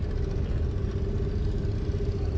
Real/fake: real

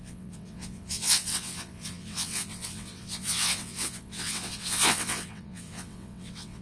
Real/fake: fake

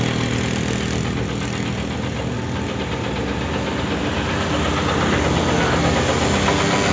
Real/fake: real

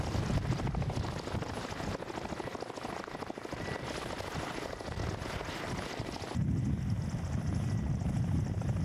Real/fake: real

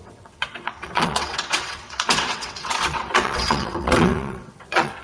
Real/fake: fake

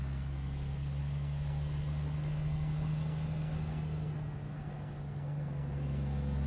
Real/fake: fake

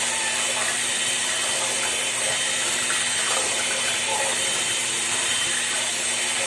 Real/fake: fake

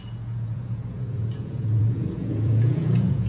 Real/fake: fake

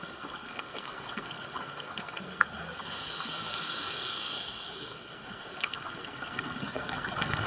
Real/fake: fake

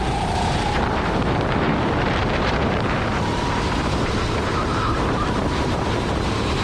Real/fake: fake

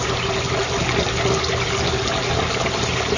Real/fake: real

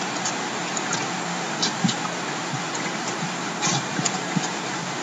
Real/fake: real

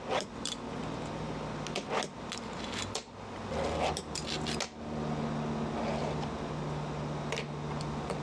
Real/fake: real